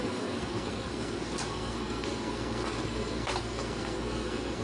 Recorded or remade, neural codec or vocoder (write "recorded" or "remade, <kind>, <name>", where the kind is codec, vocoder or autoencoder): remade, codec, SNAC